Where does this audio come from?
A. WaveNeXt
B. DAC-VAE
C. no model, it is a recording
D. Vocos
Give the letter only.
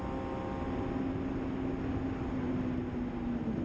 C